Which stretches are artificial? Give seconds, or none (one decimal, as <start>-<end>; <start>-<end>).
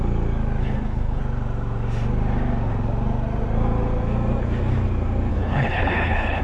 0.6-1.2; 5.3-6.4